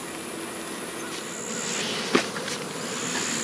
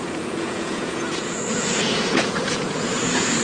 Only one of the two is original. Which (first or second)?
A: first